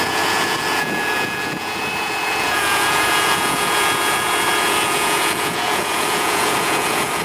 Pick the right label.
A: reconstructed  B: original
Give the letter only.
A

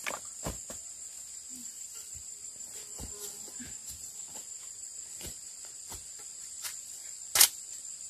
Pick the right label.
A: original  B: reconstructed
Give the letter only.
A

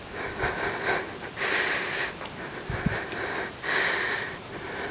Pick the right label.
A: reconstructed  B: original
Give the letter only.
B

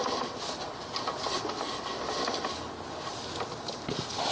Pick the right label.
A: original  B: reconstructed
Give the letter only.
A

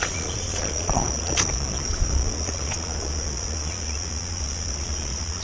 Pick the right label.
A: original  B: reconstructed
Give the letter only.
B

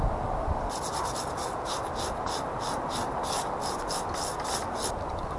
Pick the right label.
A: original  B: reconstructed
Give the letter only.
A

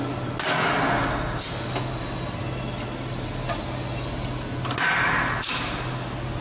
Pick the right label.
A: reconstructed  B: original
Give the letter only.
B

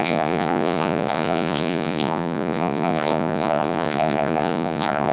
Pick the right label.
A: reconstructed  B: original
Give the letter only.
A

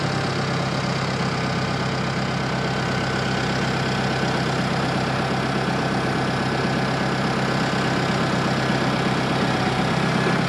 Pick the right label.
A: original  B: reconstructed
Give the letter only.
A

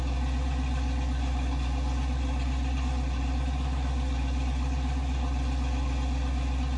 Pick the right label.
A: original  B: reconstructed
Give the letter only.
A